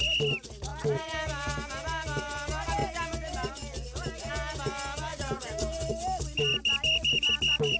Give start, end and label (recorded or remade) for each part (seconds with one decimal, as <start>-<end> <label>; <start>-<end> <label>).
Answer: 0.0-5.1 recorded; 5.1-5.9 remade; 5.9-7.8 recorded